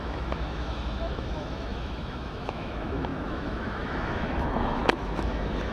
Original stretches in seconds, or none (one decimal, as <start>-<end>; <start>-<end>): none